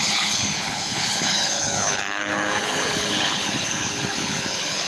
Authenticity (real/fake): fake